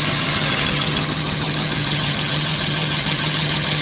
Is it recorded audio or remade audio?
remade